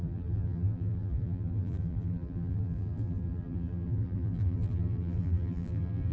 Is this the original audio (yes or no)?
no